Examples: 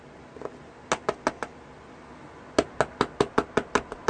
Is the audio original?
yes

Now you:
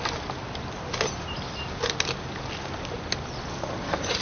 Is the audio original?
yes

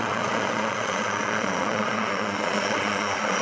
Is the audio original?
no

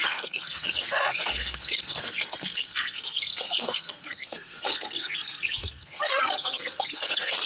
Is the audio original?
no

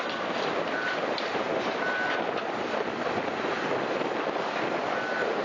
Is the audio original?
yes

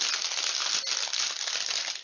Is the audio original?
yes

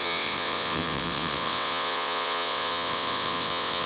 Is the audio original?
no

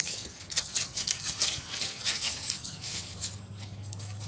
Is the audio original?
no